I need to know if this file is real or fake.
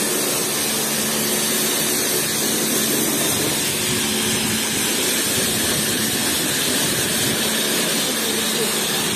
real